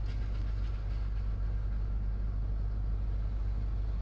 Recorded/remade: recorded